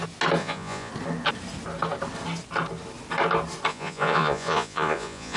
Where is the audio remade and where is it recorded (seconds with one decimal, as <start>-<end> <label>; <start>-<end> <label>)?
0.0-0.4 recorded; 0.4-0.9 remade; 0.9-3.7 recorded; 3.7-5.4 remade